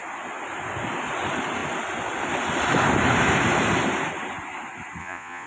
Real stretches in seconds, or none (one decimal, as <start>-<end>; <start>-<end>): 0.0-5.0